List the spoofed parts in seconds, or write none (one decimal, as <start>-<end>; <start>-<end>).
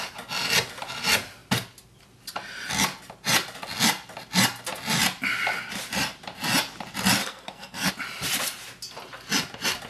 7.2-7.9